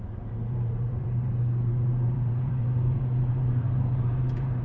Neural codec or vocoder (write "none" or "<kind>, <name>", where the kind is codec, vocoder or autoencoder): vocoder, BigVGAN v2